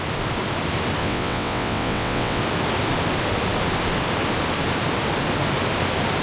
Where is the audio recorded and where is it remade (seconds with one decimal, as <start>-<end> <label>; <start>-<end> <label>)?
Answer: 0.0-1.0 recorded; 1.0-2.4 remade; 2.4-6.2 recorded